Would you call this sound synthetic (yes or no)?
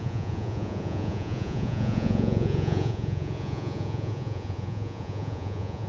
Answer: yes